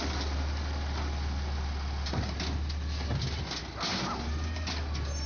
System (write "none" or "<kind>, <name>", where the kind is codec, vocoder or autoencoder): none